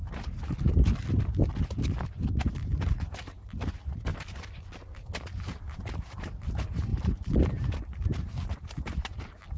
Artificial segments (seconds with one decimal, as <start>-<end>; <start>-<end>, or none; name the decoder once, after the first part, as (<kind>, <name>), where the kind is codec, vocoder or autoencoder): 0.0-0.4 (vocoder, BigVGAN v2); 2.5-4.1; 5.3-9.6